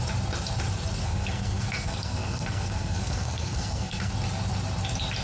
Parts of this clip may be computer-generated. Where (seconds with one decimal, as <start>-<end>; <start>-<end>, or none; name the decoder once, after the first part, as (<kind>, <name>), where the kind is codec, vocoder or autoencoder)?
1.0-4.1 (codec, SNAC)